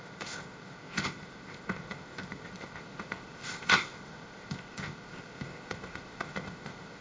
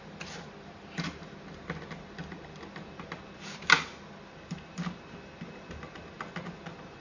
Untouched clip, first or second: second